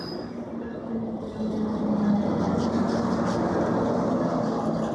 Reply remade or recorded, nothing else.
recorded